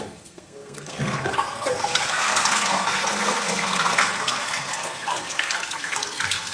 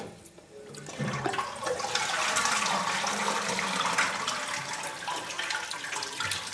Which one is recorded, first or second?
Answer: second